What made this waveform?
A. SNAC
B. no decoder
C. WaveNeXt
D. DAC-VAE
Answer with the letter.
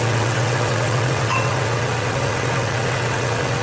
C